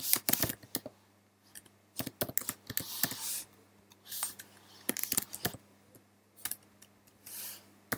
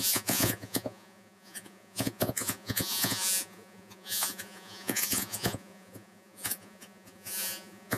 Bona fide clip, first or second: first